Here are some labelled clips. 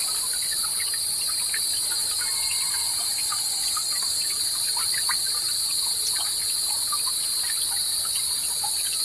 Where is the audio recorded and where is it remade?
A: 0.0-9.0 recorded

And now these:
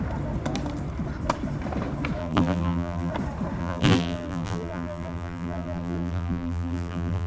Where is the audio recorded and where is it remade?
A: 0.0-2.2 recorded; 2.2-3.1 remade; 3.1-3.6 recorded; 3.6-7.3 remade

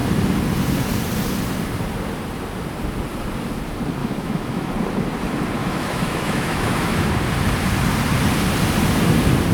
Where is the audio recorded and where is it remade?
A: 0.0-4.0 recorded; 4.0-4.7 remade; 4.7-5.6 recorded; 5.6-7.1 remade; 7.1-9.5 recorded

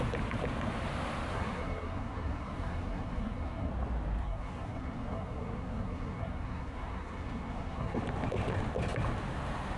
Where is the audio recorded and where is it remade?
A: 0.0-1.3 recorded; 1.3-3.7 remade; 3.7-4.2 recorded; 4.2-8.0 remade; 8.0-9.8 recorded

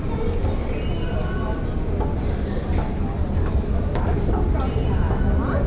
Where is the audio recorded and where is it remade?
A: 0.0-5.7 recorded

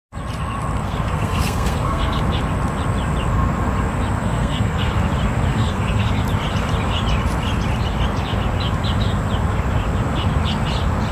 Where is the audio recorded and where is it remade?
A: 0.0-0.8 recorded; 0.8-2.2 remade; 2.2-4.2 recorded; 4.2-4.9 remade; 4.9-5.5 recorded; 5.5-6.1 remade; 6.1-11.1 recorded

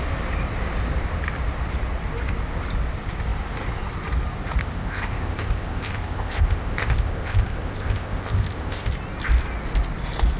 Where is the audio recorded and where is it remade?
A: 0.0-4.6 recorded; 4.6-8.9 remade; 8.9-10.4 recorded

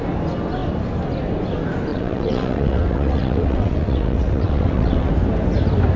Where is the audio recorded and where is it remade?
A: 0.0-1.9 recorded; 1.9-5.1 remade; 5.1-6.0 recorded